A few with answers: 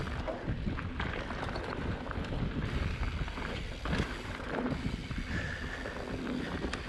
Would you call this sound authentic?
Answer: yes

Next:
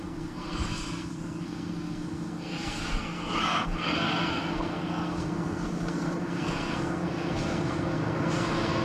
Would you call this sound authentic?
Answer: no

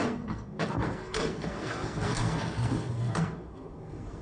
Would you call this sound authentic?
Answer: no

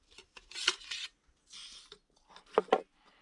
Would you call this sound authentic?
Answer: yes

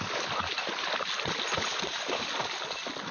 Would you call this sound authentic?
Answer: yes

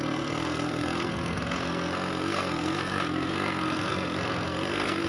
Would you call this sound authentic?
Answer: no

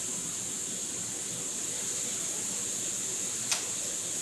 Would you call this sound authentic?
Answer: yes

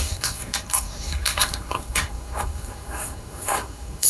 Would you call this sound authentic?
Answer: no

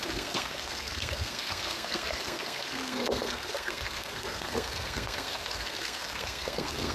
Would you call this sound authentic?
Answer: no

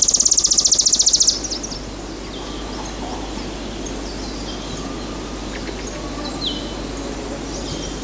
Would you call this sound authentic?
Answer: yes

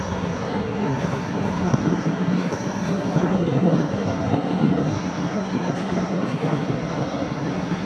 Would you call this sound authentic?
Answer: no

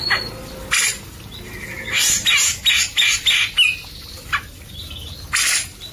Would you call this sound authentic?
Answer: yes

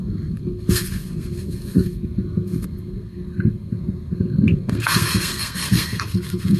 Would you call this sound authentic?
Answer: no